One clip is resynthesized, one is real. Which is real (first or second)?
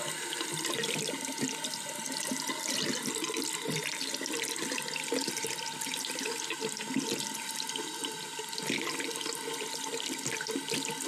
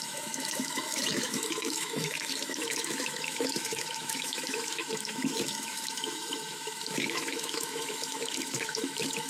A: first